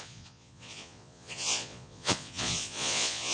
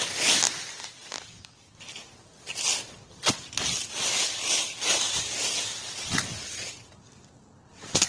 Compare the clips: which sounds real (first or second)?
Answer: second